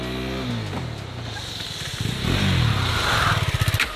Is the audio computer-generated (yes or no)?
no